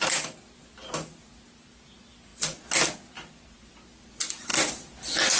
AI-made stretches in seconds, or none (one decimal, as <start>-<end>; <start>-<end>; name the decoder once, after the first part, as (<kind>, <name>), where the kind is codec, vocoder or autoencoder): none